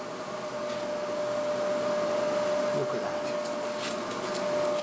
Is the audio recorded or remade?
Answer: recorded